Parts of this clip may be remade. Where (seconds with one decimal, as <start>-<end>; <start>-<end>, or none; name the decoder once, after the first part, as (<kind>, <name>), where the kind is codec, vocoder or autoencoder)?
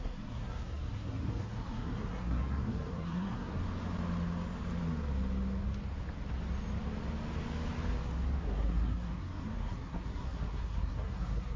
0.0-3.6 (codec, SNAC); 8.4-11.6